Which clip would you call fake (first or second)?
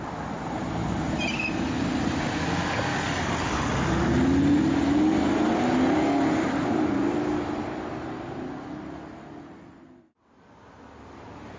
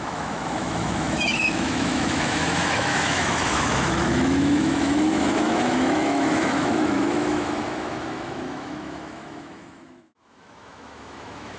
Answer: second